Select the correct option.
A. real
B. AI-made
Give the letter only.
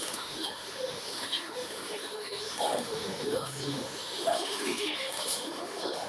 B